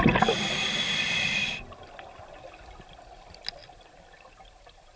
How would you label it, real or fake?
real